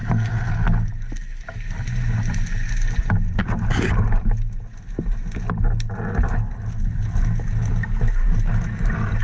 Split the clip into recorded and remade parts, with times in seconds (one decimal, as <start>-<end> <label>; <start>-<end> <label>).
0.0-0.5 remade; 0.5-9.2 recorded